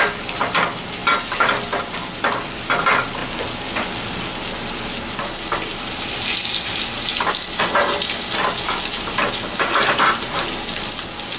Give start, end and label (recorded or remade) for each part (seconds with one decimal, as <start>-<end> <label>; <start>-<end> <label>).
0.0-11.4 recorded